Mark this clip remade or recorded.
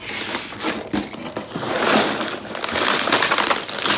recorded